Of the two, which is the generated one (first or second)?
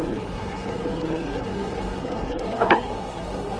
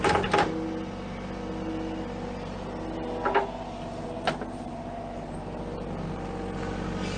first